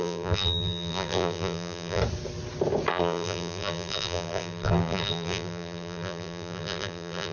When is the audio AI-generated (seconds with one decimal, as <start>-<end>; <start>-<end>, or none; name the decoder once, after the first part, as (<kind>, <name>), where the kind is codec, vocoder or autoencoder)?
0.0-2.0 (vocoder, BigVGAN v2); 2.9-7.3